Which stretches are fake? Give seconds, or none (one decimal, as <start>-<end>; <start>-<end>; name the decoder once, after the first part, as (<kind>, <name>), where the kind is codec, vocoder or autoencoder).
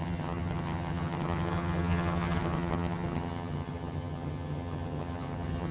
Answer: 0.0-5.7 (vocoder, HiFi-GAN)